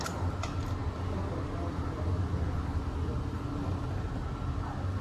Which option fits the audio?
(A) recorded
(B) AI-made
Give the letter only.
A